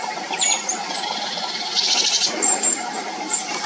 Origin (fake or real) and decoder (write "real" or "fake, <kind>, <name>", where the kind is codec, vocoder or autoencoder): fake, vocoder, BigVGAN v2